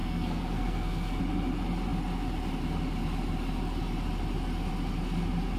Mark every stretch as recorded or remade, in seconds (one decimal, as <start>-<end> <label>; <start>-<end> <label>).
0.0-1.2 remade; 1.2-5.6 recorded